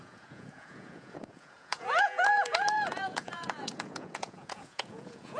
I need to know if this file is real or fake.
fake